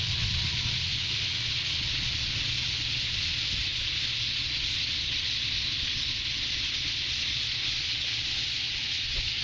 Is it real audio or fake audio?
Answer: fake